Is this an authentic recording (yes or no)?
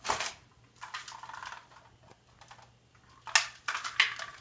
yes